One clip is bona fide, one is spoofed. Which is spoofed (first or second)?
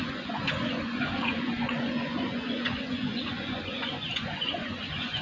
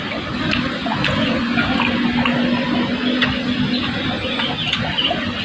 first